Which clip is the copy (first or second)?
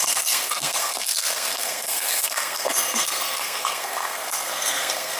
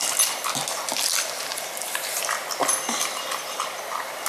first